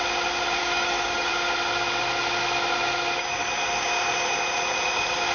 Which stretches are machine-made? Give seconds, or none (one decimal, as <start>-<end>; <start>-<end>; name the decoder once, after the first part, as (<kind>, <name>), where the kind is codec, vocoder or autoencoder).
0.6-1.3 (codec, DAC)